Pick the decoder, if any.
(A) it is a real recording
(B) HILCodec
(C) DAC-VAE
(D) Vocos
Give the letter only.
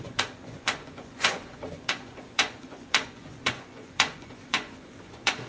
D